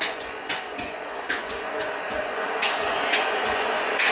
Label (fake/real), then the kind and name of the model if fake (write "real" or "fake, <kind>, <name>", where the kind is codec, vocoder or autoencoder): fake, vocoder, Vocos